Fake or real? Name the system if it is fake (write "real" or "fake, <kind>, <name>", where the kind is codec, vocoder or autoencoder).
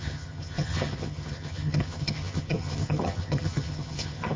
fake, vocoder, HiFi-GAN